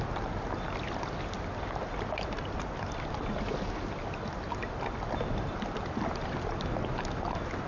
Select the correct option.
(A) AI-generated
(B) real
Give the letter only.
B